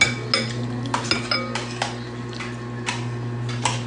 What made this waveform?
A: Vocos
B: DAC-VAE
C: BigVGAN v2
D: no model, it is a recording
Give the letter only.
D